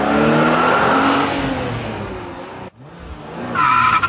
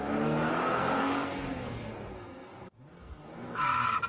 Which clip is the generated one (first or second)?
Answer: second